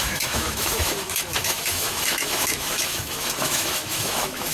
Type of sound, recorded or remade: remade